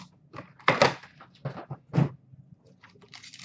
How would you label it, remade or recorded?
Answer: recorded